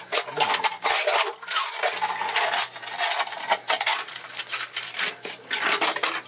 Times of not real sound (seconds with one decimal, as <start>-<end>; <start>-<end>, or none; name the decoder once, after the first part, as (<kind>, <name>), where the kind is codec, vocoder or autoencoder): none